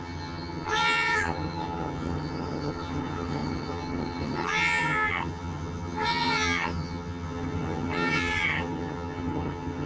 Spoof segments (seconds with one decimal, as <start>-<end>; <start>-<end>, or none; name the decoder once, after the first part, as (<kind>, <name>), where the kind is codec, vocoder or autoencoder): 0.0-9.9 (vocoder, HiFi-GAN)